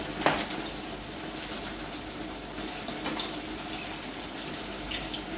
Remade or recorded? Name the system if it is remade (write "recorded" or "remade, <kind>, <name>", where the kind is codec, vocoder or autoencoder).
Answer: recorded